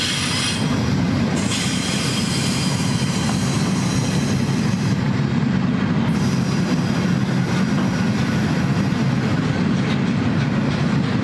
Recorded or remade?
recorded